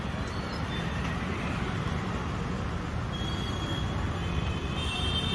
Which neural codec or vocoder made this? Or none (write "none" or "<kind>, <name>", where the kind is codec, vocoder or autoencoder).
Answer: none